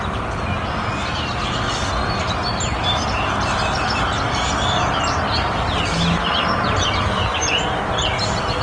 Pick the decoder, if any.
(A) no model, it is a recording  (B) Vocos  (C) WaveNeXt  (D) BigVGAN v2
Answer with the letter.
A